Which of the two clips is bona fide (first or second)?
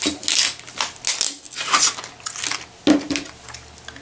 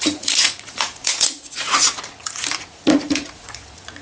first